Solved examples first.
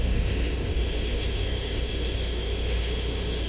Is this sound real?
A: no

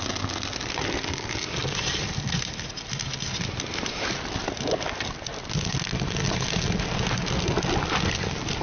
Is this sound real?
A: yes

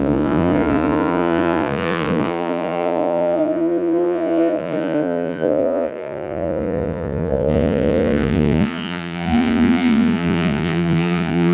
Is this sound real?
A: no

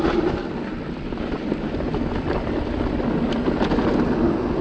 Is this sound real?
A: yes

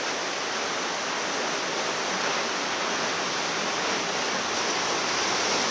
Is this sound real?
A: yes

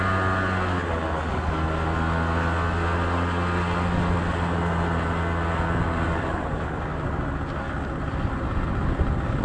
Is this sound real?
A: yes